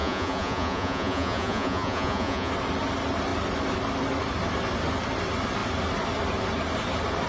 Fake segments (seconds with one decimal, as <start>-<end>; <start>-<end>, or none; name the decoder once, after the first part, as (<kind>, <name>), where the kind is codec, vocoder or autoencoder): 0.0-2.5 (vocoder, Vocos)